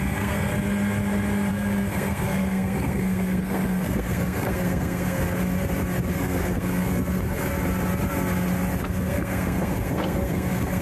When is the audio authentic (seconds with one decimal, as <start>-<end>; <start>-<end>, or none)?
0.5-1.5; 5.2-6.1; 7.5-8.8